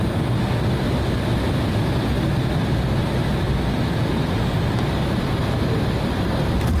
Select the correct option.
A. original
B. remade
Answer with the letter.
A